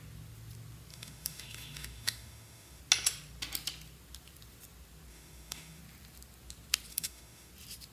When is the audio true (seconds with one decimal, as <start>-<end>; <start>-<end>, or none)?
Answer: 0.0-0.9; 2.8-5.1; 5.8-6.9; 7.5-7.9